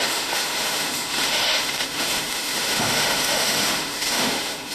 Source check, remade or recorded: remade